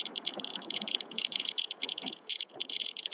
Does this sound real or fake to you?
fake